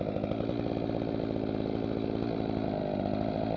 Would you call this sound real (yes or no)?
yes